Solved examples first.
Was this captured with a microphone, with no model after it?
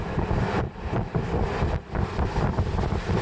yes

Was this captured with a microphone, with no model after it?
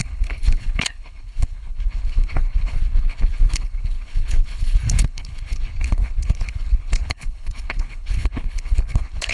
no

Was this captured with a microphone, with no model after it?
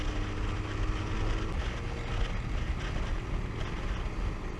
yes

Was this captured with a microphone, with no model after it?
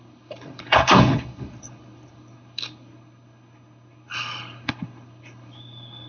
no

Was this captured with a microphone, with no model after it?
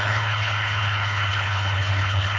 no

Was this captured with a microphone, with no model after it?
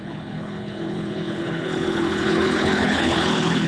no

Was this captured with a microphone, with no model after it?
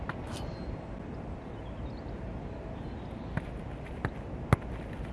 yes